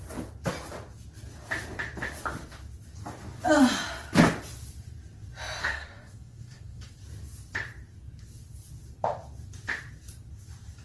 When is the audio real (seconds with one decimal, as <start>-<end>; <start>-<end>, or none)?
0.0-5.6; 6.9-10.8